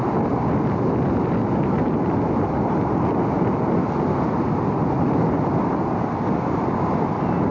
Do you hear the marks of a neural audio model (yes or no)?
no